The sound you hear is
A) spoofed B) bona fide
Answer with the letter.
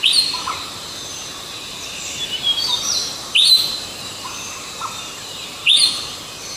A